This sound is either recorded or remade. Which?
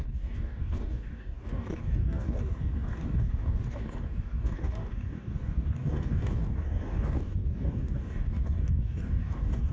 remade